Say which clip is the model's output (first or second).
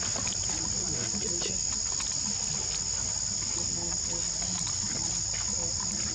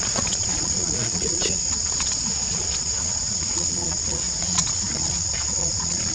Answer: second